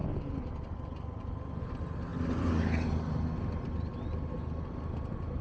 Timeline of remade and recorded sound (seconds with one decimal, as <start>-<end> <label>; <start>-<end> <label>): 0.0-5.4 recorded